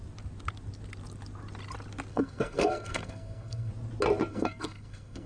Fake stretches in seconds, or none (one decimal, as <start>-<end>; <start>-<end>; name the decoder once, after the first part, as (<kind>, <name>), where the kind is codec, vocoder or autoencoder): 2.1-3.7 (codec, SNAC); 4.3-5.3